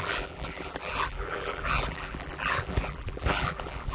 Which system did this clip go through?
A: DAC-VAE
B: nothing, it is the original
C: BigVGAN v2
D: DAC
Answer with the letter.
C